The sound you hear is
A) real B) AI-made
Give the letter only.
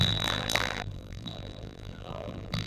B